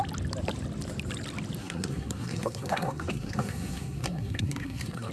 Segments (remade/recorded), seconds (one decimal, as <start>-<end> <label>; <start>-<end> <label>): 0.0-1.6 recorded; 1.6-5.1 remade